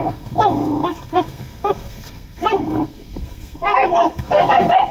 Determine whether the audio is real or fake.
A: fake